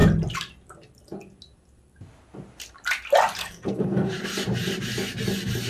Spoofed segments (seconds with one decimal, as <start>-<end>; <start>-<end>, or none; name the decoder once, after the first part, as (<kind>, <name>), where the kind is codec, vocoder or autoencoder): 3.4-4.1 (codec, SNAC)